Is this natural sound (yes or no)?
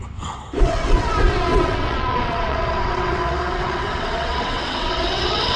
no